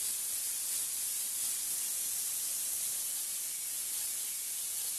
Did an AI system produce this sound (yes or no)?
yes